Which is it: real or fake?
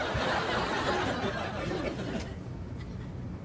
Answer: real